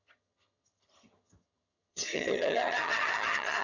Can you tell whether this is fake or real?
fake